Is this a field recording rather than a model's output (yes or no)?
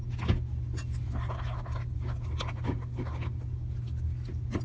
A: yes